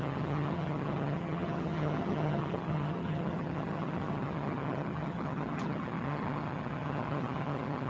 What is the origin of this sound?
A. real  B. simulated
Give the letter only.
B